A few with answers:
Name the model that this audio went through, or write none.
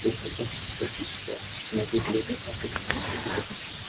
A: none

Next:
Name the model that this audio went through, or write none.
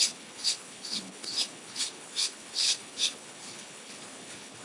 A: codec, HILCodec